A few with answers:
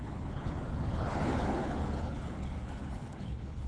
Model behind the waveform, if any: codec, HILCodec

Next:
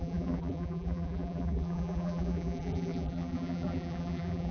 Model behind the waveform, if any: vocoder, BigVGAN v2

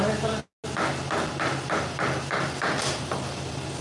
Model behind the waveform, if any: none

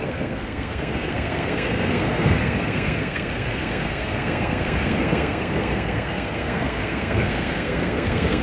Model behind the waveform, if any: codec, SNAC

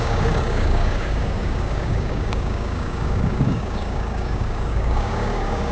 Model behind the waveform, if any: codec, DAC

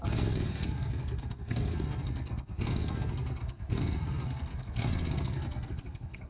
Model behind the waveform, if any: codec, SNAC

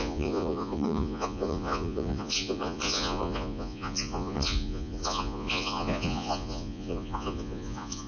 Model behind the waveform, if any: vocoder, Vocos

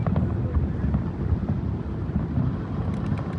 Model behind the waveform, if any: none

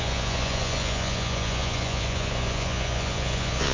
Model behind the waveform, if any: vocoder, Vocos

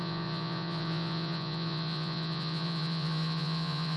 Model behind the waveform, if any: vocoder, Vocos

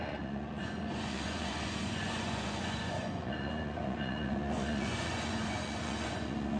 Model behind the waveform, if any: vocoder, Vocos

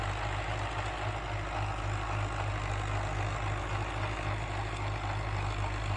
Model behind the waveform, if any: none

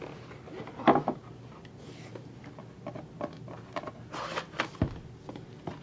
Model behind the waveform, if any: none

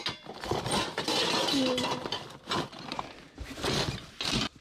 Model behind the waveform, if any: vocoder, BigVGAN v2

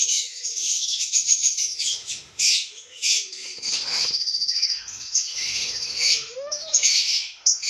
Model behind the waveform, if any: autoencoder, DAC-VAE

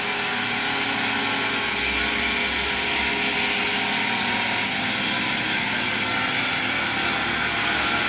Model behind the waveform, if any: none